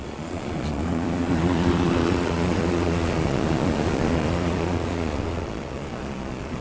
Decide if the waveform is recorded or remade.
remade